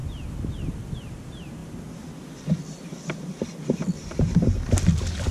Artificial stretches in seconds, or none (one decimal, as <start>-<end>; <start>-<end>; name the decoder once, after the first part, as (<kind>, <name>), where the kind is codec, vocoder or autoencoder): none